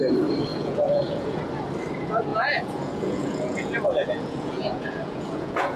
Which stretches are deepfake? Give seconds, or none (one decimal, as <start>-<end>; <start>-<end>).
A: 0.5-1.4; 2.3-5.8